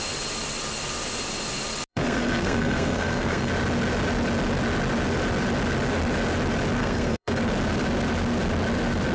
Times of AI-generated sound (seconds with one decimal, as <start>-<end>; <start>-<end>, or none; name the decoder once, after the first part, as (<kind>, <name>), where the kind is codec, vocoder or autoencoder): 1.9-3.5 (codec, SNAC); 6.8-7.4

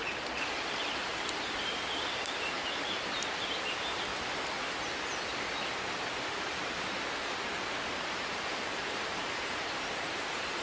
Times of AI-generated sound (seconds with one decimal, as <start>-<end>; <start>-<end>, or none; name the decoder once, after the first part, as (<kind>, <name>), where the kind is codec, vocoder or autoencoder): 0.0-4.1 (vocoder, BigVGAN v2); 6.2-10.6

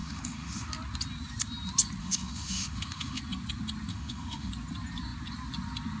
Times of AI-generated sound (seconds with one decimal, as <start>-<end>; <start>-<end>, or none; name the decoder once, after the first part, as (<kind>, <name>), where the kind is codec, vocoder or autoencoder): 0.0-0.7 (autoencoder, DAC-VAE); 2.0-3.2; 3.9-4.5

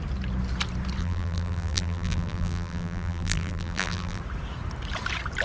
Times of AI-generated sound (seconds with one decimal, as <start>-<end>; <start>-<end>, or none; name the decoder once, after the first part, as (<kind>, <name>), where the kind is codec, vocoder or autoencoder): 1.0-4.2 (vocoder, BigVGAN v2)

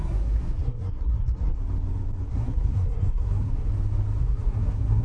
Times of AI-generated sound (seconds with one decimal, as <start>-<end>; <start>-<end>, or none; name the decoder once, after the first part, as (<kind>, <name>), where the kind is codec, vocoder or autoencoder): 0.0-1.6 (codec, SNAC); 2.3-3.7; 4.2-5.0